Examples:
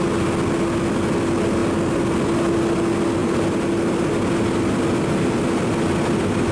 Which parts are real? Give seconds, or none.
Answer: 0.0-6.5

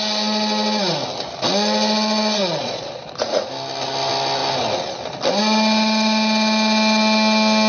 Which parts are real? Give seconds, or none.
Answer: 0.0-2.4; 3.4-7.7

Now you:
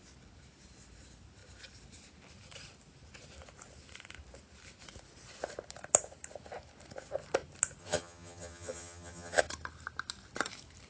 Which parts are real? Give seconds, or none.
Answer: 0.0-7.8; 9.4-10.9

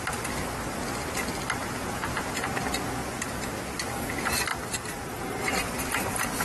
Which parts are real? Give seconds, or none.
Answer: 0.0-1.6; 2.5-6.4

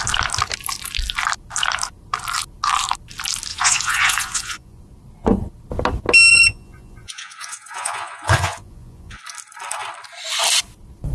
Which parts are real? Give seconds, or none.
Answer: 0.0-3.5; 4.8-6.3; 9.2-11.1

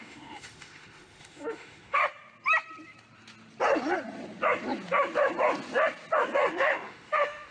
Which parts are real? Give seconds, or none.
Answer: 2.0-6.5